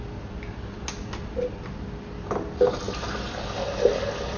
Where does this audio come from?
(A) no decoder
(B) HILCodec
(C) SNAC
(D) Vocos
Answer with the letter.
A